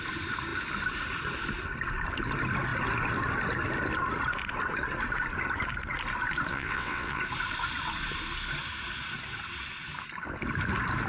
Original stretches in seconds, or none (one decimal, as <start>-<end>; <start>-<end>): 0.0-6.5; 7.2-11.1